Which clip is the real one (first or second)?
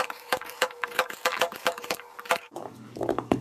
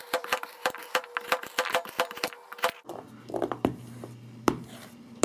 second